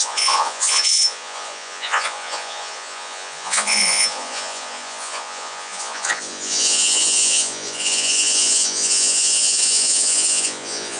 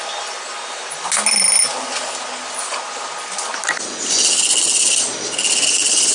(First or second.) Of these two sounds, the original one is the second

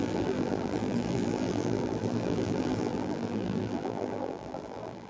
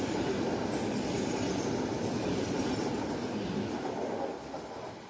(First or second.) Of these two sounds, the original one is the second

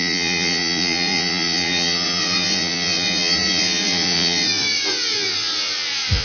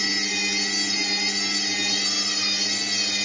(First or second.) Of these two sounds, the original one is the second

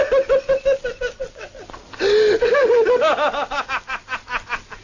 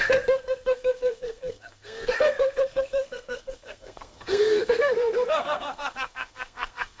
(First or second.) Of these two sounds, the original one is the first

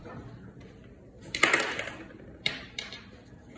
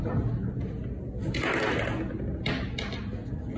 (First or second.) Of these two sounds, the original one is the second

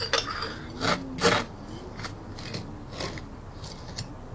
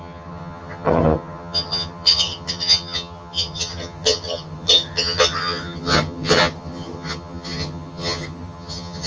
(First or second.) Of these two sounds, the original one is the first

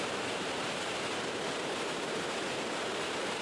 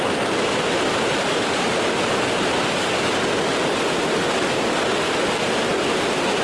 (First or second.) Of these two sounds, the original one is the second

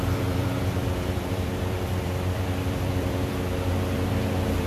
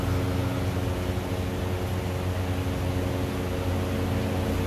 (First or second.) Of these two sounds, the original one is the second